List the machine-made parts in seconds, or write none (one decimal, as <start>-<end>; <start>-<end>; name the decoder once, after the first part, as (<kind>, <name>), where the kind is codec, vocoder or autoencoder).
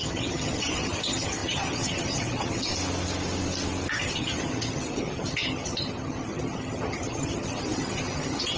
0.0-2.7 (vocoder, HiFi-GAN); 3.9-8.6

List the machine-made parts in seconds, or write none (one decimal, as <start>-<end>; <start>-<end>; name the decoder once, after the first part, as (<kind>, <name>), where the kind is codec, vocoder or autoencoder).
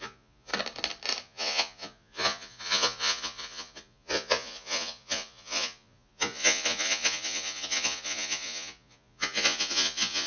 0.0-0.5 (vocoder, Vocos); 1.2-10.3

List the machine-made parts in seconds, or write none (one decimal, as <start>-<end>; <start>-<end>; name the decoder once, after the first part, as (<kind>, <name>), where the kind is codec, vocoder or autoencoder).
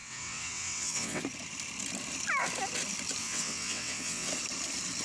0.0-1.2 (vocoder, WaveNeXt); 3.2-4.3